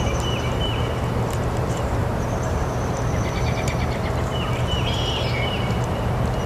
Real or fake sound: fake